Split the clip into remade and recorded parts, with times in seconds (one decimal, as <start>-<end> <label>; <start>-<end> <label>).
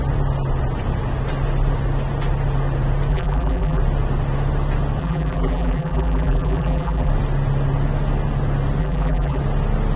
0.0-3.1 recorded; 3.1-3.8 remade; 3.8-5.0 recorded; 5.0-7.1 remade; 7.1-8.8 recorded; 8.8-9.4 remade; 9.4-10.0 recorded